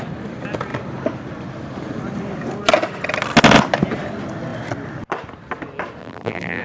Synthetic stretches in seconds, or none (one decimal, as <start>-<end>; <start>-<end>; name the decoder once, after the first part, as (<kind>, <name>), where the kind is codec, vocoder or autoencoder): 6.0-6.6 (vocoder, BigVGAN v2)